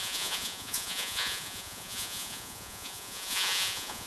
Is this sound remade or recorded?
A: remade